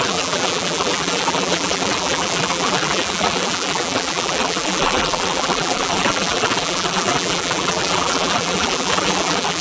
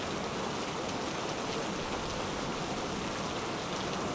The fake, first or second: first